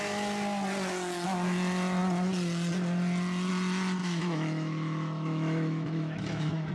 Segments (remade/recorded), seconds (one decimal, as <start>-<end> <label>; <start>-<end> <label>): 0.0-4.0 recorded; 4.0-6.7 remade